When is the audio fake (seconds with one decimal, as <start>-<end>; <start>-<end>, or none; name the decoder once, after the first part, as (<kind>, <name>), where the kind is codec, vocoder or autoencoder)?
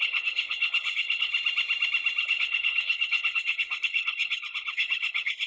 0.0-1.3 (codec, HILCodec); 2.2-5.5